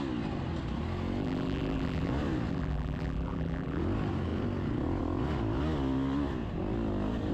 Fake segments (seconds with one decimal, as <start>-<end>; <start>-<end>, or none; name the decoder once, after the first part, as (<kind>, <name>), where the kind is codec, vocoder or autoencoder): 1.2-2.1 (vocoder, BigVGAN v2); 2.5-3.8